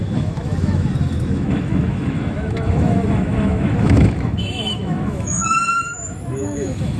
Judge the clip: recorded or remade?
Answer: remade